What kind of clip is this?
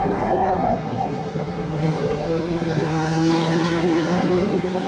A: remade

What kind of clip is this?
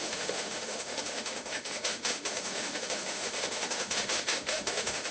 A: remade